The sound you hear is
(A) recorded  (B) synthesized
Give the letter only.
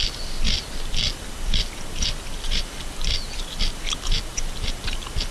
A